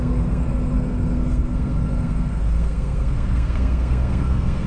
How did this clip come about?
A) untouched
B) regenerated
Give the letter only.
B